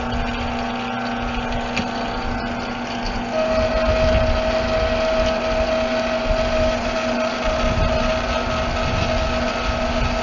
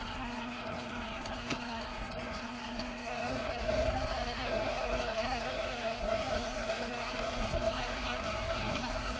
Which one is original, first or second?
first